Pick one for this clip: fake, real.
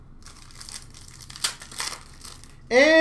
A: real